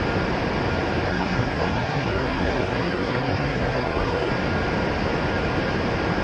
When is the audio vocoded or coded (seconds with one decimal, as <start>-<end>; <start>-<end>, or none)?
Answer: 1.1-4.3

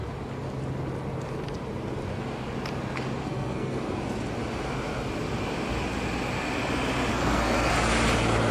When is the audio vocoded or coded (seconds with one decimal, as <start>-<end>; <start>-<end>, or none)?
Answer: 3.2-4.0; 7.1-7.7